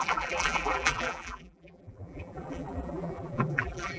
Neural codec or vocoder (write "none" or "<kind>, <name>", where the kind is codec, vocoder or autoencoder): vocoder, BigVGAN v2